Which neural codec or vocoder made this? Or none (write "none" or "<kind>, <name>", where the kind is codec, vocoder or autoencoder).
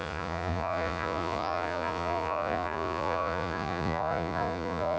vocoder, Vocos